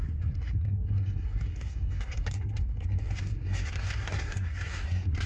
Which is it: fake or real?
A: fake